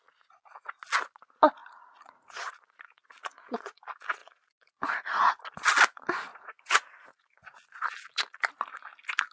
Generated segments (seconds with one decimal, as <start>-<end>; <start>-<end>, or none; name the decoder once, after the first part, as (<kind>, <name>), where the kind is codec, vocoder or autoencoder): 1.6-3.8 (vocoder, Vocos); 4.2-5.3; 6.3-8.5